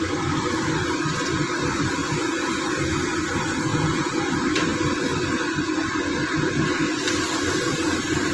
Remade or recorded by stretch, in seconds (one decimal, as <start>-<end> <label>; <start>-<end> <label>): 0.0-2.0 recorded; 2.0-2.6 remade; 2.6-3.7 recorded; 3.7-4.3 remade; 4.3-8.3 recorded